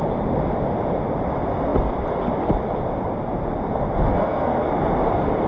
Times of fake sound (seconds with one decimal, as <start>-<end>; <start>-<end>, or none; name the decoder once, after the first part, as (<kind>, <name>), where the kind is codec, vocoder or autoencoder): 4.1-4.7 (codec, SNAC)